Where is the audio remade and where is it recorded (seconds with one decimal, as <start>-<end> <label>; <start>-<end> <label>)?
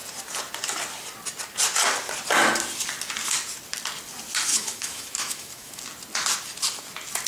0.0-4.5 recorded; 4.5-5.8 remade; 5.8-7.3 recorded